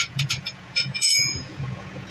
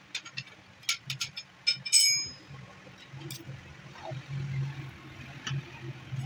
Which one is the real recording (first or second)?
second